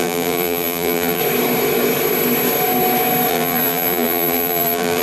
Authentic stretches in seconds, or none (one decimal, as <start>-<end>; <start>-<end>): 1.2-3.3